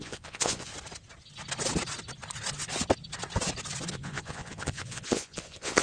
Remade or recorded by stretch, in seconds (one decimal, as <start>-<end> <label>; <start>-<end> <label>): 0.0-0.7 remade; 0.7-3.9 recorded; 3.9-5.8 remade